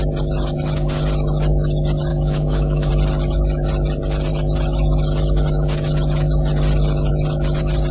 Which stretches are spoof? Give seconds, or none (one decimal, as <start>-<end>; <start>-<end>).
2.1-2.9